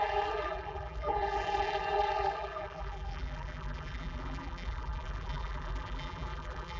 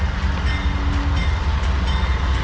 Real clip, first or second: second